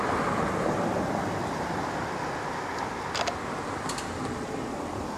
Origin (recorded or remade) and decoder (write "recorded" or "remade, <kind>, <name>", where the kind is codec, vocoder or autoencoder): recorded